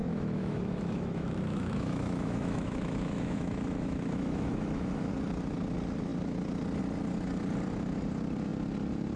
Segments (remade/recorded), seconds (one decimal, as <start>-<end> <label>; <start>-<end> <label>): 0.0-5.1 remade; 5.1-9.2 recorded